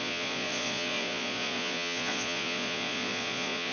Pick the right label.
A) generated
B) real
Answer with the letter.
A